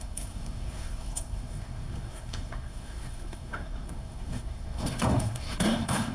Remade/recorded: remade